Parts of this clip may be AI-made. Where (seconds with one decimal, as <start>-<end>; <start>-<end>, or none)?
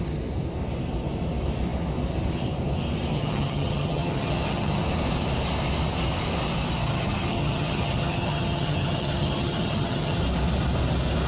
3.1-4.8; 6.8-10.2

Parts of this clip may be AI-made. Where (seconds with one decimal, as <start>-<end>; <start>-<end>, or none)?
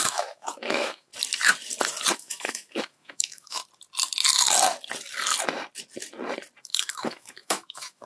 0.0-1.1; 2.1-3.6; 6.6-8.1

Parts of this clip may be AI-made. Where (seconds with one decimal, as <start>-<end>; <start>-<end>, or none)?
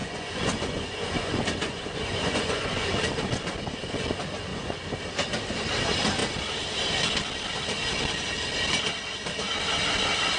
0.0-2.9; 4.5-5.0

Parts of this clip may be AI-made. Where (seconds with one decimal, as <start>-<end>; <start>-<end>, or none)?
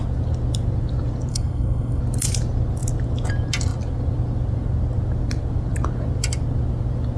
1.3-2.0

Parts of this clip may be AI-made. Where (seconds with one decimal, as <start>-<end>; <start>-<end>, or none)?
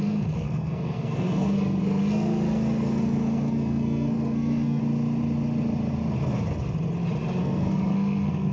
0.0-4.8; 7.4-8.5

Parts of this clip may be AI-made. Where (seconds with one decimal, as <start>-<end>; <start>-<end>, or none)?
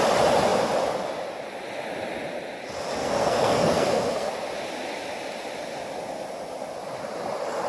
3.0-4.3